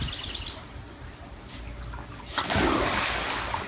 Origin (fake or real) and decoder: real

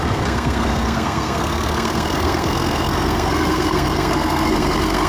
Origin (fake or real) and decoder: fake, codec, SNAC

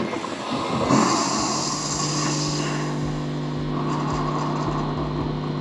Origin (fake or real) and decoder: real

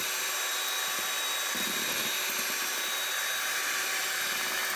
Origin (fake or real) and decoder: real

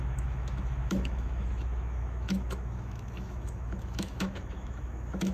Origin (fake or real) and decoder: fake, autoencoder, DAC-VAE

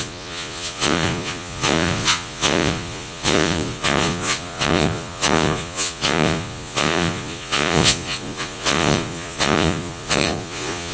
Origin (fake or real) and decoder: fake, vocoder, Vocos